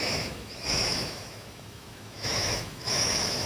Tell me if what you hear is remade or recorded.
remade